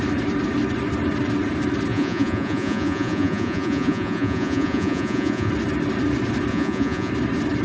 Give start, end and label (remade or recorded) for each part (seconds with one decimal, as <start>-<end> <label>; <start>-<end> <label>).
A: 0.0-1.9 recorded; 1.9-5.5 remade; 5.5-6.5 recorded; 6.5-7.1 remade; 7.1-7.6 recorded